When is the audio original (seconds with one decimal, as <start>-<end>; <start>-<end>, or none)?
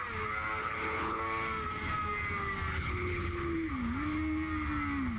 0.0-0.6; 1.2-2.7; 3.7-5.2